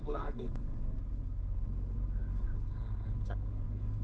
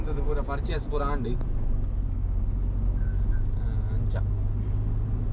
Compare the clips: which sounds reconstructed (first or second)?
first